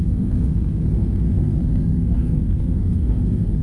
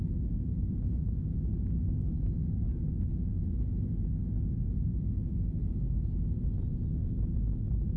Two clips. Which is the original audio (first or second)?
second